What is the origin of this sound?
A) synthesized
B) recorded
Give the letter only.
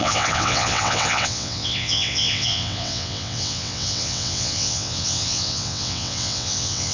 A